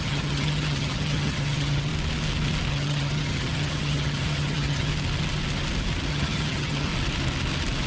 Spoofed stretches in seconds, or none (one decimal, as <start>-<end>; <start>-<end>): 0.0-1.9; 2.7-4.9; 6.1-6.9